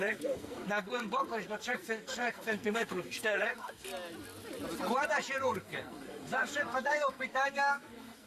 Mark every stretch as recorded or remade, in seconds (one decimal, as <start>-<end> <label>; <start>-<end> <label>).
0.0-3.9 remade; 3.9-5.4 recorded; 5.4-8.3 remade